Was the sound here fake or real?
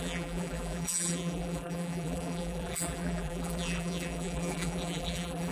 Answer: fake